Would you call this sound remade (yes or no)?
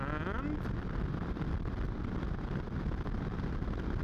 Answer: no